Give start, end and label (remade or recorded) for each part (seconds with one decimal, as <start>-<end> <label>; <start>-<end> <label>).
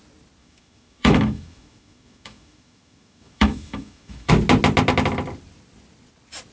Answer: 0.0-0.4 recorded; 0.4-4.3 remade; 4.3-6.5 recorded